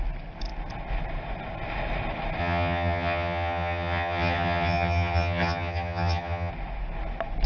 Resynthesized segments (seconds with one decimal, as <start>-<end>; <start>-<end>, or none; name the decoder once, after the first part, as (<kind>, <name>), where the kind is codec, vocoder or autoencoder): 2.4-6.5 (vocoder, HiFi-GAN)